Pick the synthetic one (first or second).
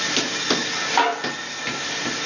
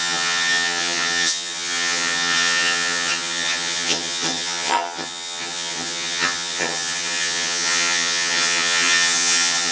second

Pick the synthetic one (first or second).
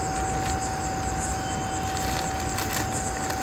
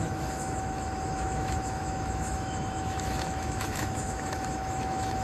second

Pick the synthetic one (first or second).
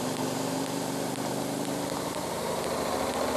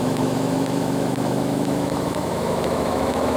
second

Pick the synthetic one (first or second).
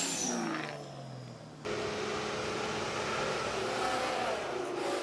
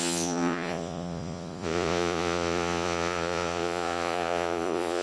second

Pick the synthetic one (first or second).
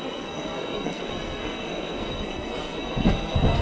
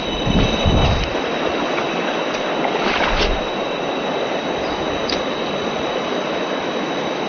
first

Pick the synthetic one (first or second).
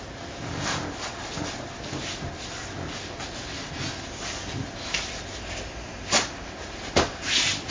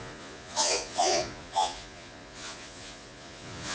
second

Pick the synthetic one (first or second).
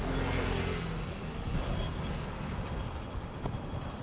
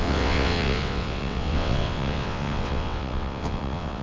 second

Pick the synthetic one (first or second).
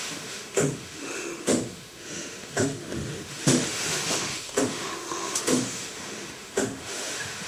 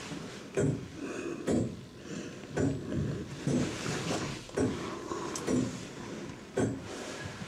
first